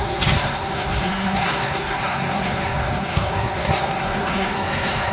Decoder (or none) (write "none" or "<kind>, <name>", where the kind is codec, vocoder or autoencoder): codec, SNAC